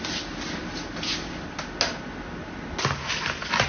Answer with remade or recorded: recorded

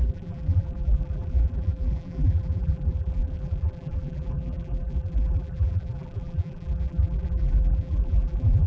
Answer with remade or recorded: remade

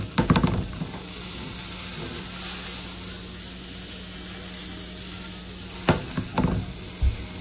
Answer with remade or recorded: recorded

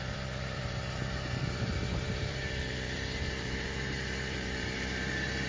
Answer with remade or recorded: remade